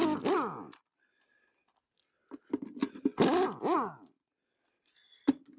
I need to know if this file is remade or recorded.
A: recorded